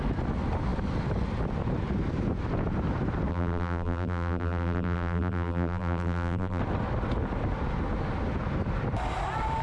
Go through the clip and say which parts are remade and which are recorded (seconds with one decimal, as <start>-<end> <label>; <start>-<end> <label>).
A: 0.0-3.3 recorded; 3.3-6.6 remade; 6.6-9.6 recorded